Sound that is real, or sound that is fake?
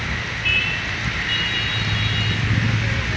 real